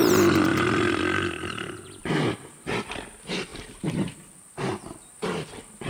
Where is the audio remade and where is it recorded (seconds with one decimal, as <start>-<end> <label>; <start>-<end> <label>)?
0.0-2.0 recorded; 2.0-2.9 remade; 2.9-3.5 recorded; 3.5-5.9 remade